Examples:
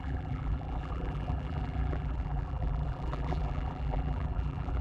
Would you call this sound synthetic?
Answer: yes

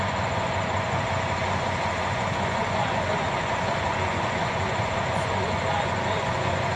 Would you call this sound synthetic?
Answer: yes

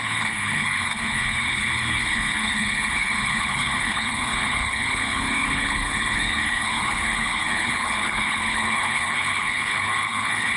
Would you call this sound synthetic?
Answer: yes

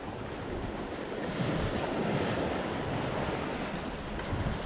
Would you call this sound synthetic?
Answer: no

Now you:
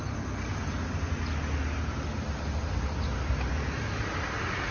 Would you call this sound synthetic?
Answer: no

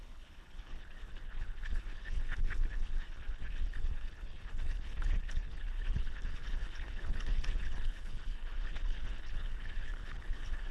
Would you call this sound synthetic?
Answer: yes